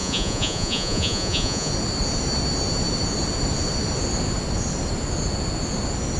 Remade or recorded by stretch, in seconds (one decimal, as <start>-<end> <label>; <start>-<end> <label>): 0.0-1.7 remade; 1.7-6.2 recorded